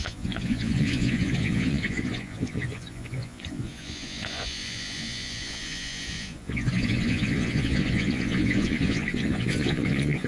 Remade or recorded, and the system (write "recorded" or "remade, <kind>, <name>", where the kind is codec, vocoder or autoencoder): remade, vocoder, Vocos